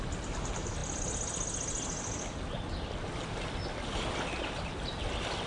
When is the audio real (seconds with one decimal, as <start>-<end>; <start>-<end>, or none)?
0.0-5.5